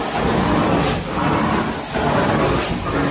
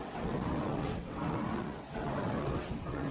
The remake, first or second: second